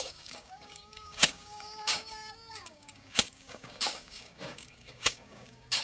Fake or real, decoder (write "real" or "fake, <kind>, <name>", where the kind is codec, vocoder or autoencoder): fake, codec, DAC